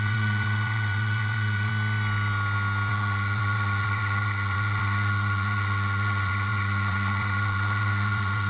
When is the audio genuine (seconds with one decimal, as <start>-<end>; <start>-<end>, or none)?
1.7-2.9